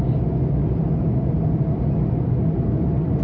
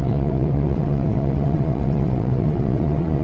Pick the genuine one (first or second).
first